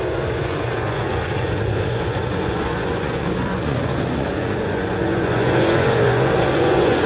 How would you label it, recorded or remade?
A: remade